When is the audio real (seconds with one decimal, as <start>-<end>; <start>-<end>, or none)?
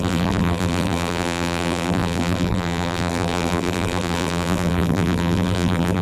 none